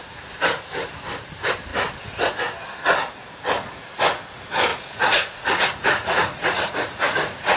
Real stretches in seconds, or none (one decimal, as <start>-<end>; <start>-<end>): 0.0-4.7

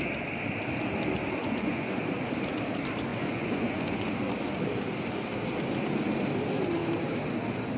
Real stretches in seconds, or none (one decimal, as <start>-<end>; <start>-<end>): 0.0-1.4; 2.0-3.1; 4.1-7.8

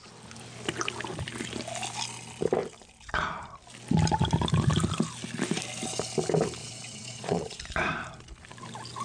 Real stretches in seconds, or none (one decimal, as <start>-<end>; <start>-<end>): 0.0-6.6; 7.6-9.0

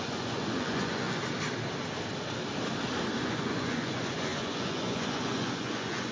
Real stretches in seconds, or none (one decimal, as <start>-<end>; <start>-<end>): 1.2-3.2

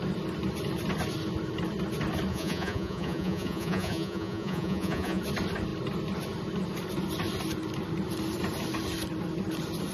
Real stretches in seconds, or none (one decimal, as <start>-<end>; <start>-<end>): 0.0-2.3; 5.2-9.9

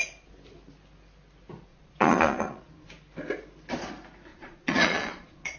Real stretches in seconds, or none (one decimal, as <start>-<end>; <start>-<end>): 0.0-1.7; 2.7-4.3

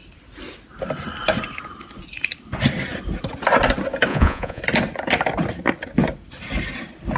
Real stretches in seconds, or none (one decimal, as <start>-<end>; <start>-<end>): 0.0-4.1; 4.6-7.2